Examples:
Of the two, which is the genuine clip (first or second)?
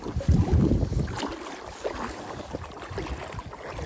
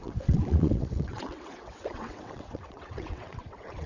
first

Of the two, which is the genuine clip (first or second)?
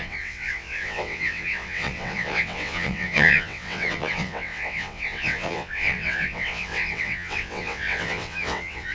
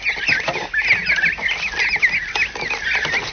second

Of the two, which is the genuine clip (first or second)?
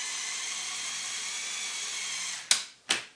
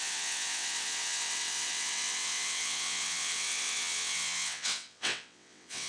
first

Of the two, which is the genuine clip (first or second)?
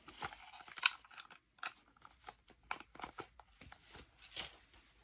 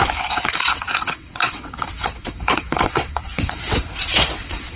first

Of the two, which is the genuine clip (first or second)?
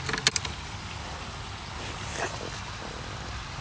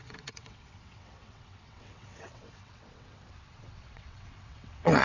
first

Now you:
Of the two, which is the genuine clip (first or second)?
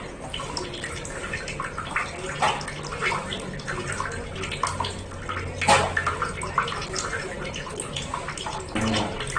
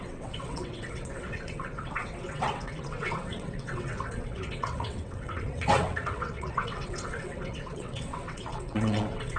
first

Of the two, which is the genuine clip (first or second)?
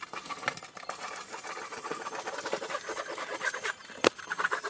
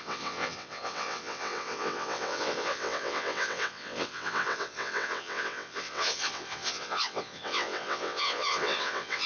first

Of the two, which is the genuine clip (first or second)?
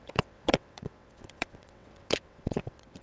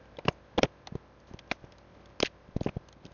second